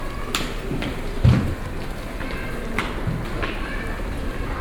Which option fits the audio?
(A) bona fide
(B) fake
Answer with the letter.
A